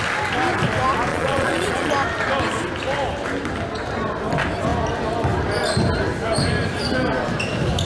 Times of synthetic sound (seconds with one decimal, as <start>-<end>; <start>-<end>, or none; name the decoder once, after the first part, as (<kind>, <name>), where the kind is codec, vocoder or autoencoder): 1.1-1.9 (vocoder, Vocos)